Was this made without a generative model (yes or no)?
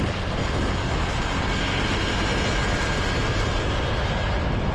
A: yes